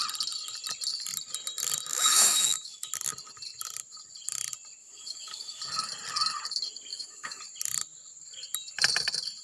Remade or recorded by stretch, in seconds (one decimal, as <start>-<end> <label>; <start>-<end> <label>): 0.0-1.9 recorded; 1.9-2.9 remade; 2.9-4.8 recorded; 4.8-5.6 remade; 5.6-6.9 recorded; 6.9-7.4 remade; 7.4-9.4 recorded